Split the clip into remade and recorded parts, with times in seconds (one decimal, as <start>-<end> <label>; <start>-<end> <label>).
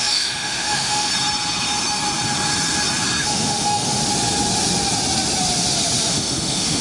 0.0-1.1 remade; 1.1-3.2 recorded; 3.2-4.0 remade; 4.0-6.1 recorded; 6.1-6.8 remade